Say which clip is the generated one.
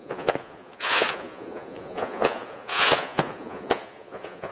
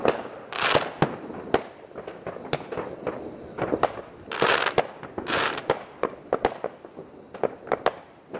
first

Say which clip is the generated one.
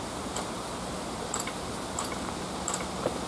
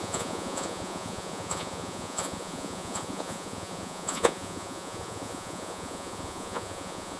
second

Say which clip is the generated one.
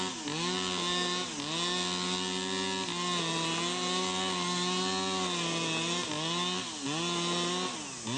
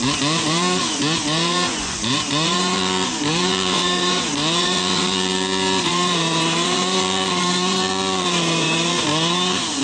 second